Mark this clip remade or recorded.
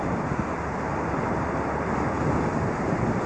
recorded